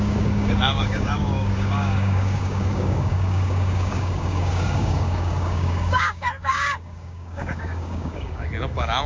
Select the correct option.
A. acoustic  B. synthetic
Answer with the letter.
B